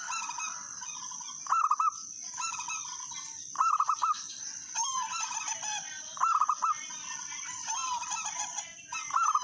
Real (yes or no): no